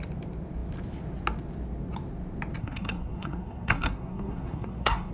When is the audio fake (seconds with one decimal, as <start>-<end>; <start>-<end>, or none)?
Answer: 2.6-5.1